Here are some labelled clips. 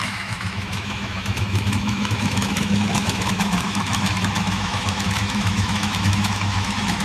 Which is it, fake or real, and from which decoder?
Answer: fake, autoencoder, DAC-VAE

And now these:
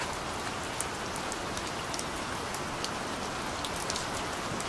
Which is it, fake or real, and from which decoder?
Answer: real